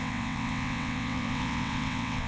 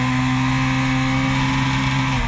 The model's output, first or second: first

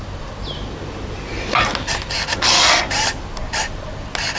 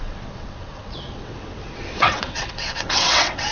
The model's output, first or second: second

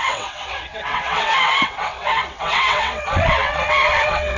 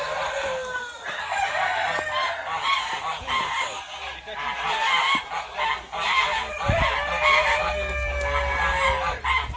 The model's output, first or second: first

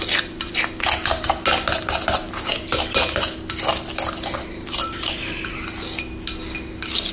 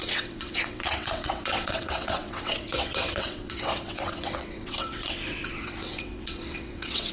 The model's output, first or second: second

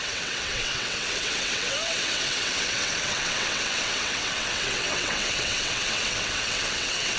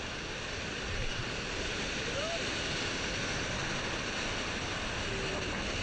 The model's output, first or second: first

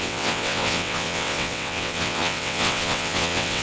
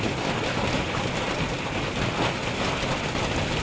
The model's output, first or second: first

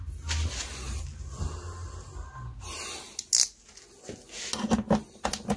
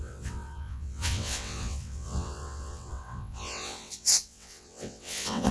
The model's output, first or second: second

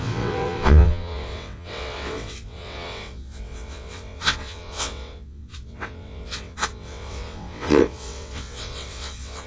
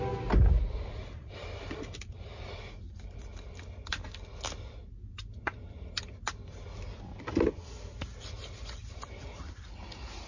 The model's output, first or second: first